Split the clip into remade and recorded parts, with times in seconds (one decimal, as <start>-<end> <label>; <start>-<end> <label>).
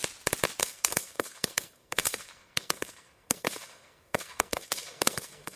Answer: 0.0-0.6 recorded; 0.6-5.6 remade